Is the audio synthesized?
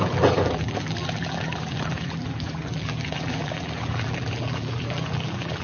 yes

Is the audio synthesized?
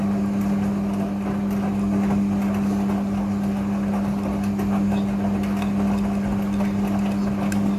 no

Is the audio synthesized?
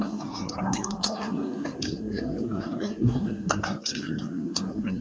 yes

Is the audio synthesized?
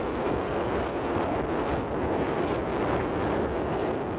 no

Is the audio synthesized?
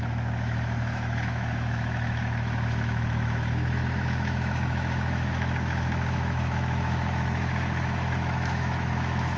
yes